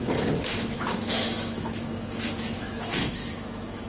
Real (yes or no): no